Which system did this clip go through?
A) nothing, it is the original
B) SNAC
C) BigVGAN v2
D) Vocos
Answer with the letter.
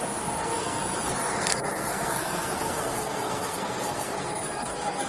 B